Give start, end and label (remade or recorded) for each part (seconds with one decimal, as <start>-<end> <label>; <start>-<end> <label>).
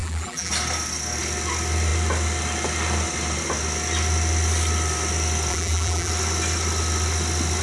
0.0-0.5 remade; 0.5-5.5 recorded; 5.5-6.1 remade; 6.1-7.6 recorded